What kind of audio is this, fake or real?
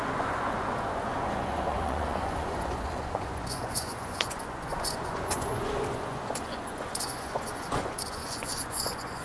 fake